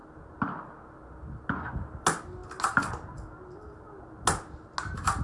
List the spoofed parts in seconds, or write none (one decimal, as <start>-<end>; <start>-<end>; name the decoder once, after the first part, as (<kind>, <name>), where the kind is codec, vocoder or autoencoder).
none